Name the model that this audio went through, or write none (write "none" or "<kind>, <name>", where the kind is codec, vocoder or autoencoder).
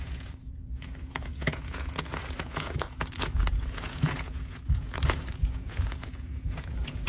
vocoder, Vocos